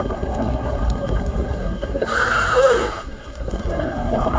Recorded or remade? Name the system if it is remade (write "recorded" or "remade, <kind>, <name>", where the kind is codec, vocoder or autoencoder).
remade, codec, SNAC